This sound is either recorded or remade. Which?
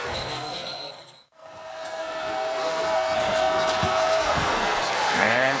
remade